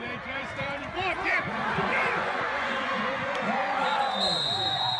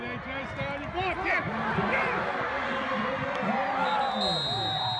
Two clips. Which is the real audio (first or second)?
second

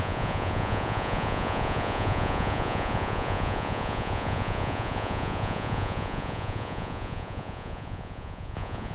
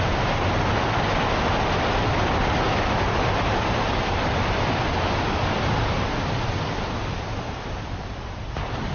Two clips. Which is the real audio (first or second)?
second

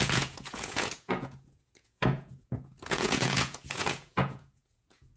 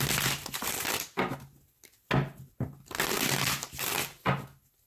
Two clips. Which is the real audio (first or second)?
second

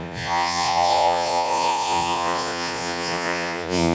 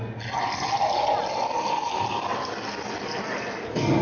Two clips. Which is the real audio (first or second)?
second